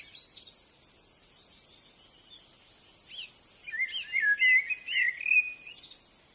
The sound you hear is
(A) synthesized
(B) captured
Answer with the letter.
B